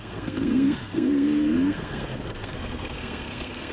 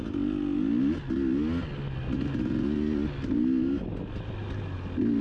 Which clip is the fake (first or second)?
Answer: first